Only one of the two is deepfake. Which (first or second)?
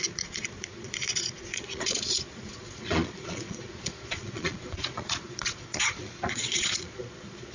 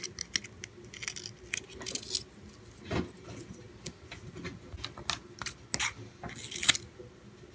first